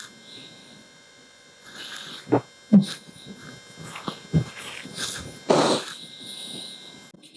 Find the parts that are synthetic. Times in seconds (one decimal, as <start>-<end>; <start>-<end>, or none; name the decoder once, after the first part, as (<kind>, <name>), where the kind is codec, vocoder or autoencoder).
0.6-2.2 (vocoder, Vocos)